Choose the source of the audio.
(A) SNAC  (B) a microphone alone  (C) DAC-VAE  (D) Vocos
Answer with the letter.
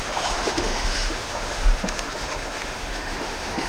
C